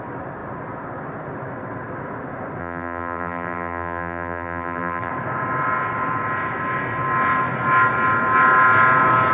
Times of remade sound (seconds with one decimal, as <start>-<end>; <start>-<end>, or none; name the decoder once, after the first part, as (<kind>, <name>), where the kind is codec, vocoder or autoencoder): 2.6-5.1 (vocoder, BigVGAN v2)